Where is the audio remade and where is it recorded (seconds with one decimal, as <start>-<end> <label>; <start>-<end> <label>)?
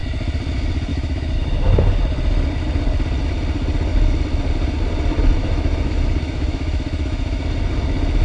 0.0-0.9 recorded; 0.9-1.9 remade; 1.9-5.4 recorded; 5.4-7.4 remade; 7.4-8.2 recorded